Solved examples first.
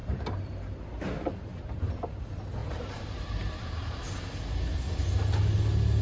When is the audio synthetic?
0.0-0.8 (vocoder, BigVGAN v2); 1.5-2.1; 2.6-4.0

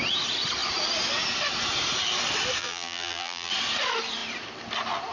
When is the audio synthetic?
2.6-3.5 (vocoder, BigVGAN v2)

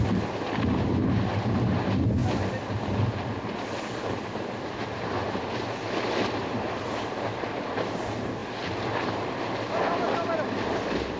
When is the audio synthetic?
none

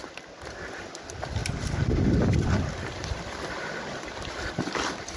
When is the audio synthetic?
none

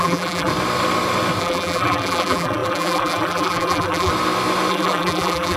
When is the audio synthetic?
0.0-0.5 (vocoder, BigVGAN v2); 1.4-4.1; 4.7-5.6

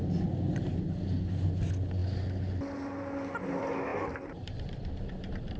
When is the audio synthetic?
3.9-5.6 (vocoder, BigVGAN v2)

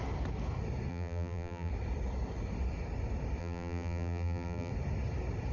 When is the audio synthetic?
0.9-1.7 (vocoder, BigVGAN v2); 3.4-4.7

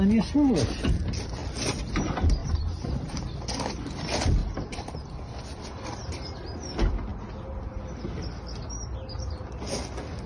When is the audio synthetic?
2.4-3.2 (vocoder, BigVGAN v2); 4.4-5.1